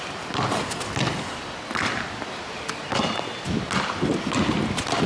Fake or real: real